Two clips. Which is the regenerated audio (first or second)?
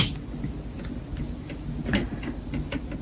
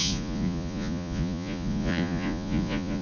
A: second